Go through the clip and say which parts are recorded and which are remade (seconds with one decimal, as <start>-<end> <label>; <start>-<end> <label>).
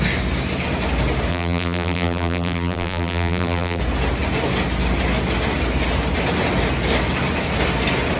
0.0-1.3 recorded; 1.3-3.8 remade; 3.8-8.2 recorded